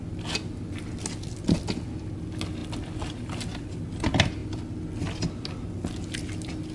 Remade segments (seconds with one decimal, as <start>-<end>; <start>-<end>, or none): none